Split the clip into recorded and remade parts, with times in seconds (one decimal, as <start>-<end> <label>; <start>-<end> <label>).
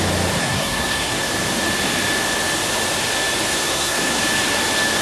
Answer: 0.0-0.4 recorded; 0.4-1.3 remade; 1.3-3.5 recorded; 3.5-4.2 remade; 4.2-5.0 recorded